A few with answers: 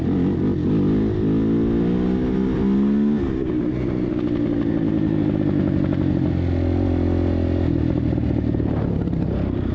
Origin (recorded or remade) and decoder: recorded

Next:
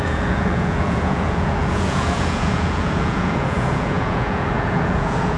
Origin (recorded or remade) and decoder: remade, vocoder, Vocos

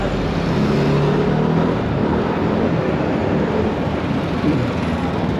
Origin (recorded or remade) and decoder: recorded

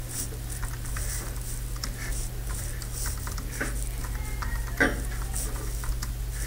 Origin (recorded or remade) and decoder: recorded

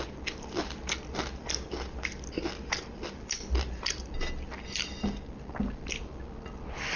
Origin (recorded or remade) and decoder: recorded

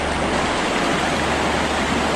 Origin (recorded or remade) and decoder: recorded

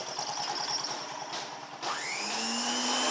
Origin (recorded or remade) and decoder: recorded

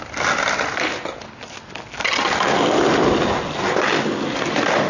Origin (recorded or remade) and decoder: recorded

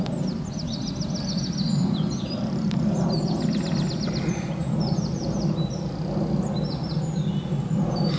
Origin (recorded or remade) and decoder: recorded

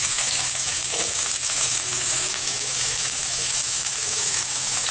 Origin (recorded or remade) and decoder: remade, autoencoder, DAC-VAE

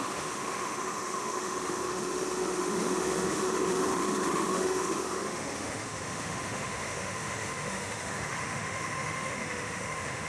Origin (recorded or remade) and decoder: remade, autoencoder, DAC-VAE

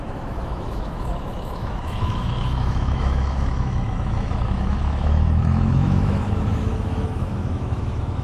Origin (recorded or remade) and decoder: remade, autoencoder, DAC-VAE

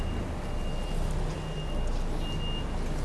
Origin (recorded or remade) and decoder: recorded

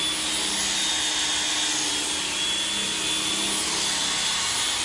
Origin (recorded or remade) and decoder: recorded